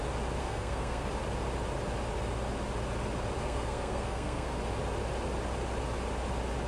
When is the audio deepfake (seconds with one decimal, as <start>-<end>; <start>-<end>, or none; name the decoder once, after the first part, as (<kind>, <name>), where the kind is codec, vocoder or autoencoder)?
0.4-1.1 (codec, SNAC); 3.4-4.6